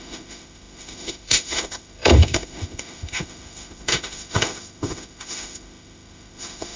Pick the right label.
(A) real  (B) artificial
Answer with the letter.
B